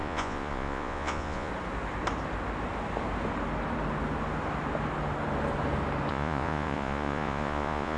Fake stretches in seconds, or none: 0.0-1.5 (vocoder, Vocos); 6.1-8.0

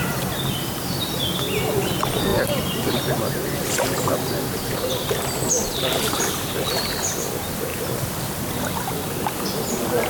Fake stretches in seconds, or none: none

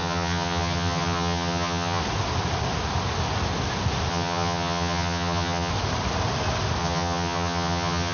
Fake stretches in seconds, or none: 0.0-2.0 (vocoder, HiFi-GAN); 4.1-5.7; 6.8-8.1

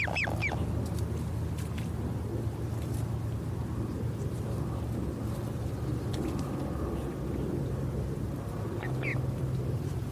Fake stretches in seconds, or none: 9.1-10.1 (vocoder, BigVGAN v2)

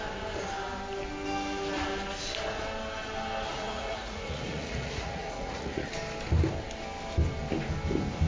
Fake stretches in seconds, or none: 3.5-5.9 (vocoder, Vocos)

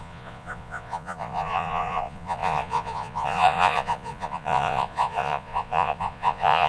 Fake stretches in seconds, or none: 0.0-6.7 (vocoder, Vocos)

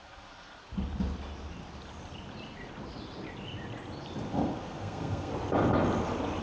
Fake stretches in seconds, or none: 0.0-0.6 (codec, SNAC); 4.3-5.3

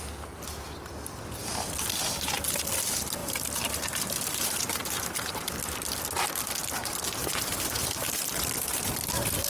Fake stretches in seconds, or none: 3.2-5.6 (vocoder, BigVGAN v2); 7.2-7.8